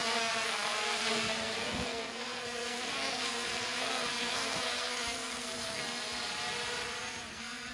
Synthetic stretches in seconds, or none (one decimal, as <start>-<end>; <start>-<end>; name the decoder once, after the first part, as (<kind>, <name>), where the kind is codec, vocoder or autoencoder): 0.0-5.8 (codec, SNAC); 7.3-7.7